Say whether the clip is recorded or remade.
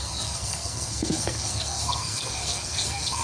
remade